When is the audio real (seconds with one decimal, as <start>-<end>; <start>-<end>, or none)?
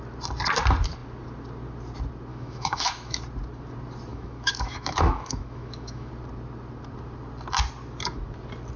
0.0-2.3; 3.2-4.1; 6.1-8.8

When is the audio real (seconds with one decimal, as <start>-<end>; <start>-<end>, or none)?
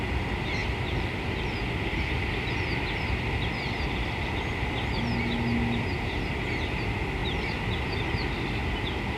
0.0-9.2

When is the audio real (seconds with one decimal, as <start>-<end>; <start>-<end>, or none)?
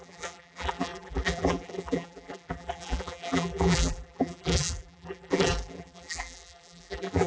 none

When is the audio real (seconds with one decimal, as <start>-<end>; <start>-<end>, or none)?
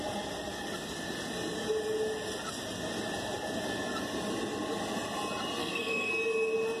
0.0-5.6; 6.1-6.8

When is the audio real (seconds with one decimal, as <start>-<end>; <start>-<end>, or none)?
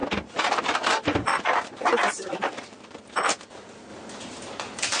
3.0-5.0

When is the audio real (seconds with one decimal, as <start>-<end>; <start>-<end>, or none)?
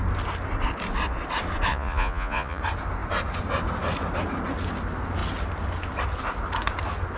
0.0-1.7; 2.6-7.2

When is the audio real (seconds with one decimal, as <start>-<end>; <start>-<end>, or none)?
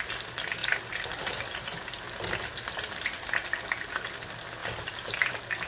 0.0-5.7